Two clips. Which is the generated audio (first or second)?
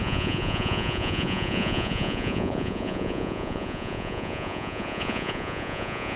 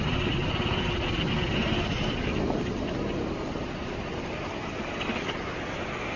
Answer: first